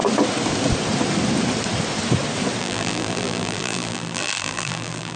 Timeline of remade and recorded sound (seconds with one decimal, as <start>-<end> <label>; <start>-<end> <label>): 0.0-2.6 recorded; 2.6-5.2 remade